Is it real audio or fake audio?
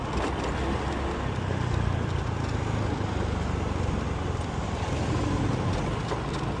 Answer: real